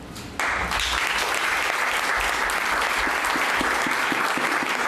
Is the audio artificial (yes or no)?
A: no